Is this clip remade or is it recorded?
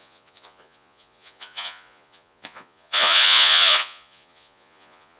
remade